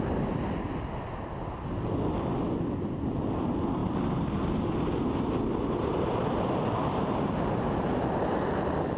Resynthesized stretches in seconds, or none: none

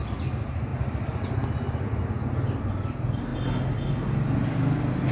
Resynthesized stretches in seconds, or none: none

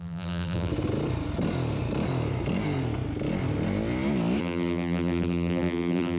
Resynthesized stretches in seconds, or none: 0.0-0.7 (vocoder, BigVGAN v2); 4.4-6.2

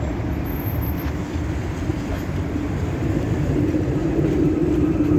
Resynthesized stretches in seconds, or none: 1.9-3.7 (vocoder, BigVGAN v2)

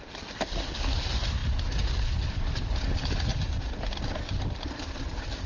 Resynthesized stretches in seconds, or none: 3.3-5.5 (vocoder, BigVGAN v2)

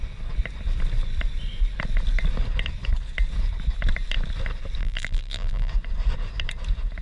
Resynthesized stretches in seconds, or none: 4.8-5.7 (vocoder, BigVGAN v2)

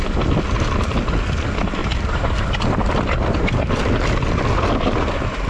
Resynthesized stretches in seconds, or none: 1.8-2.6 (vocoder, BigVGAN v2)